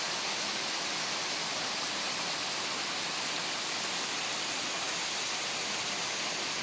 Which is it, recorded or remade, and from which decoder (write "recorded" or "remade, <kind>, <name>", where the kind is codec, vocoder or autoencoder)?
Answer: recorded